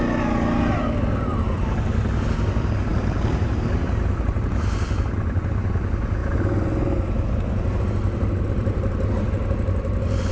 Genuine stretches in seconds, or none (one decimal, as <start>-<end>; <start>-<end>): 0.0-10.3